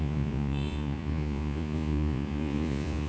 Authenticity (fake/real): fake